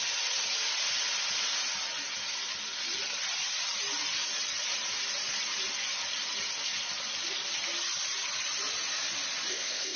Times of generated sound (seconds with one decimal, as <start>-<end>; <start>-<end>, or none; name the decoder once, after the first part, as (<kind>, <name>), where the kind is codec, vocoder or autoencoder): 9.5-10.0 (codec, ZipCodec)